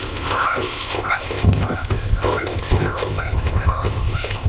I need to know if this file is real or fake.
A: fake